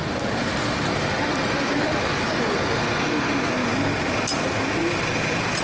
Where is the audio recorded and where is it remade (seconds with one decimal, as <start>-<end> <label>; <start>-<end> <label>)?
0.0-5.6 recorded